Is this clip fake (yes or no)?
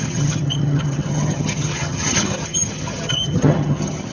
yes